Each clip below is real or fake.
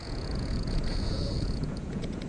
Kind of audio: fake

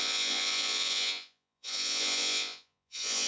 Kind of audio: fake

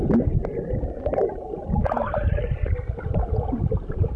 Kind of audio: real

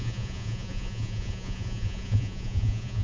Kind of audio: fake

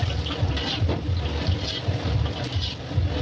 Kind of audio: real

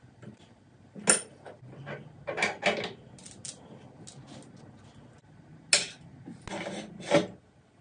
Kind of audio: real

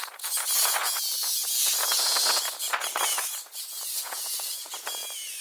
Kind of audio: fake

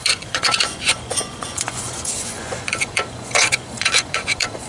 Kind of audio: fake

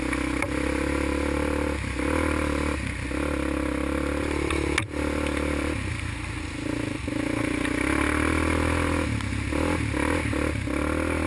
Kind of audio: real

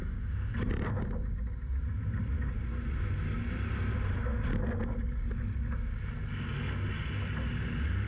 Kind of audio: real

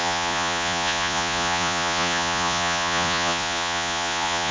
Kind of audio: fake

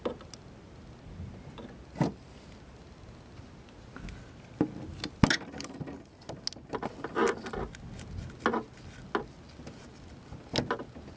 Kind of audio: real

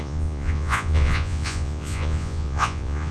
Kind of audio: fake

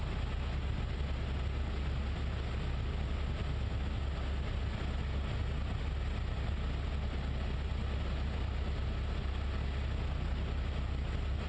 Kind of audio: real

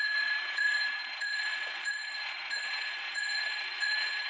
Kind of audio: fake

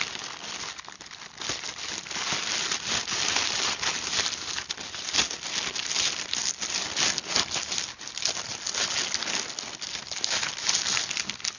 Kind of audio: real